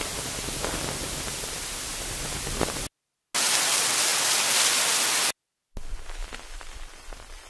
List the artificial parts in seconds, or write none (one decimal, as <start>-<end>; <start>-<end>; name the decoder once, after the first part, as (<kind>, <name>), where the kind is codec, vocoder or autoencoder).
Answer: 6.2-7.5 (vocoder, BigVGAN v2)